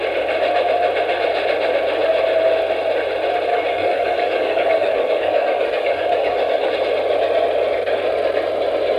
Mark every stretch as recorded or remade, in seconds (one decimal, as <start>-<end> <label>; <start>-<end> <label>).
0.0-3.5 recorded; 3.5-6.7 remade; 6.7-9.0 recorded